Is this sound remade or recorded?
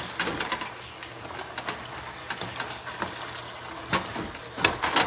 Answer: recorded